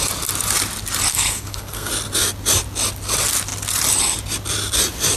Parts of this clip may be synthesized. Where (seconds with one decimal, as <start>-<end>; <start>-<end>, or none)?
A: 1.1-1.9